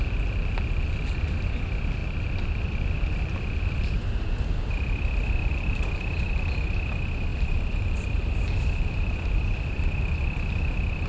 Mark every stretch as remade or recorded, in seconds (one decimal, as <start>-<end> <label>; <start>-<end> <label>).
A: 0.0-2.0 recorded; 2.0-3.9 remade; 3.9-5.4 recorded; 5.4-6.3 remade; 6.3-7.3 recorded; 7.3-10.0 remade; 10.0-11.1 recorded